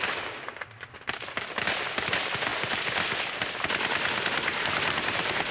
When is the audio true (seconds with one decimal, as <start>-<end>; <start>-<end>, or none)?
0.0-5.5

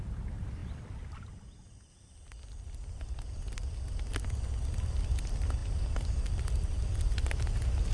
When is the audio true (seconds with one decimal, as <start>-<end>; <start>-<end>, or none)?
0.0-7.9

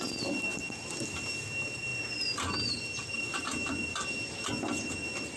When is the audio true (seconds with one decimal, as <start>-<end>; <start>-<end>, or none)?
0.0-5.4

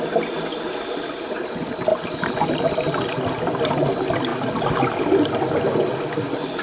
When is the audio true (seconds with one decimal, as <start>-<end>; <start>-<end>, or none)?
0.0-6.6

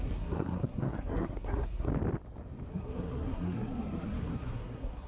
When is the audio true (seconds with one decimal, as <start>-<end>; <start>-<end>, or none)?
1.9-2.7

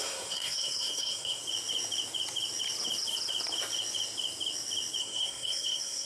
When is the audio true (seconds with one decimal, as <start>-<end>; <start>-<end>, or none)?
1.4-5.0